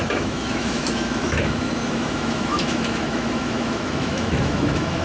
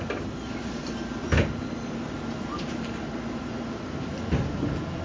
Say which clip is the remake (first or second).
first